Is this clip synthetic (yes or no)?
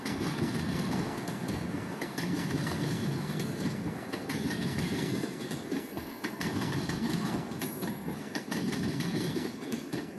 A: yes